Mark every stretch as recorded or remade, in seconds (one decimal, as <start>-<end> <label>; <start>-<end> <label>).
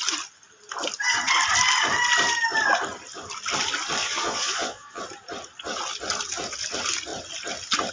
0.0-4.0 recorded; 4.0-5.0 remade; 5.0-7.9 recorded